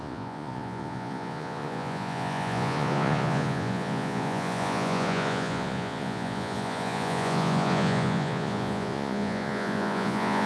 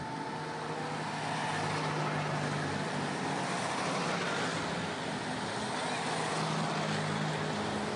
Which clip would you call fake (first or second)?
first